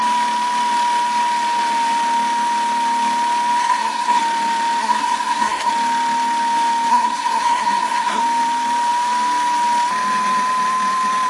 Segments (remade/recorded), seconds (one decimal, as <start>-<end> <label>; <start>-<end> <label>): 0.0-3.6 recorded; 3.6-4.2 remade; 4.2-4.8 recorded; 4.8-5.7 remade; 5.7-6.9 recorded; 6.9-8.2 remade; 8.2-11.3 recorded